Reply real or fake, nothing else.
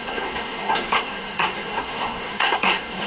fake